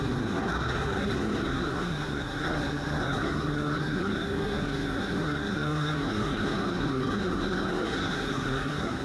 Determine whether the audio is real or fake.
fake